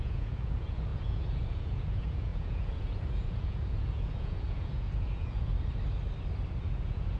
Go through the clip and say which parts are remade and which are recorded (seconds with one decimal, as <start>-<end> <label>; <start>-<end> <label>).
0.0-5.5 remade; 5.5-6.6 recorded; 6.6-7.2 remade